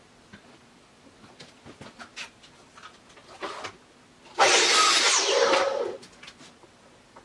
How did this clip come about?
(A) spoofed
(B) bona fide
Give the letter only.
B